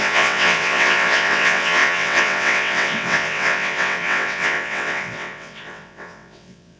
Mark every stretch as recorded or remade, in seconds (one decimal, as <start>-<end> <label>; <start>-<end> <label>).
0.0-6.8 remade

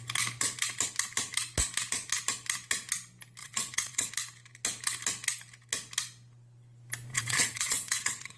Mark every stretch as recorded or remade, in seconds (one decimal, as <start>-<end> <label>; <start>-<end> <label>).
0.0-3.4 recorded; 3.4-4.1 remade; 4.1-7.1 recorded; 7.1-8.4 remade

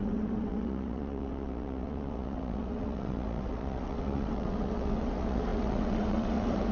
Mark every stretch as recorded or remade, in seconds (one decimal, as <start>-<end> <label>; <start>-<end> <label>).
0.0-6.7 remade

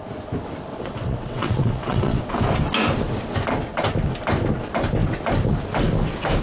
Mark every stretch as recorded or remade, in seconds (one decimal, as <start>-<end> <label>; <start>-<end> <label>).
0.0-0.7 recorded; 0.7-2.2 remade; 2.2-6.4 recorded

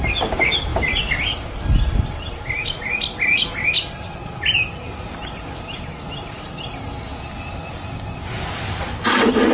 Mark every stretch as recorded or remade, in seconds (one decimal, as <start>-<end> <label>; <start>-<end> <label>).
0.0-9.5 recorded

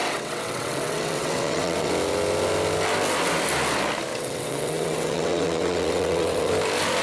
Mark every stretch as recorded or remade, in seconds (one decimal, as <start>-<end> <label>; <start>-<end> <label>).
0.0-1.9 remade; 1.9-4.1 recorded; 4.1-6.5 remade; 6.5-7.0 recorded

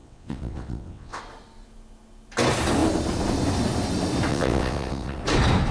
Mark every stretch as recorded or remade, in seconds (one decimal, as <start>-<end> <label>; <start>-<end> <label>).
0.0-1.2 remade; 1.2-4.3 recorded; 4.3-5.2 remade; 5.2-5.7 recorded

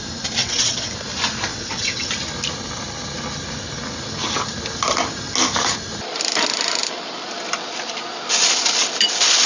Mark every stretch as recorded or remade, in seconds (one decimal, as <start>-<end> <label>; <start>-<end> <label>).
0.0-0.4 recorded; 0.4-0.9 remade; 0.9-1.5 recorded; 1.5-2.1 remade; 2.1-9.5 recorded